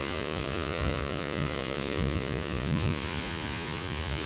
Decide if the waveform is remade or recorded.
remade